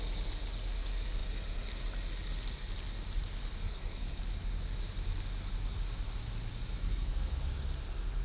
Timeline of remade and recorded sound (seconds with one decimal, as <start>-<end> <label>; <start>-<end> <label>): 0.0-3.6 recorded; 3.6-4.2 remade; 4.2-6.8 recorded; 6.8-7.4 remade; 7.4-8.2 recorded